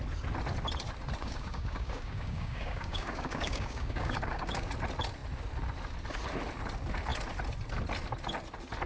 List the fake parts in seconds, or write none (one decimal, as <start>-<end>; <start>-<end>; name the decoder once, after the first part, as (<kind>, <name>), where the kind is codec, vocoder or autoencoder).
1.2-4.7 (codec, DAC)